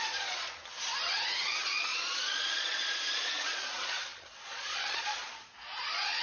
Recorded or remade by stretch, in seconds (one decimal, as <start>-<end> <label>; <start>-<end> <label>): 0.0-0.6 remade; 0.6-1.6 recorded; 1.6-6.2 remade